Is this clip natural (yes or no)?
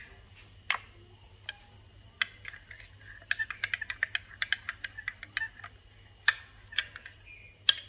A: yes